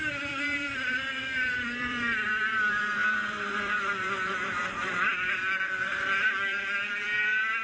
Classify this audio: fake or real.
fake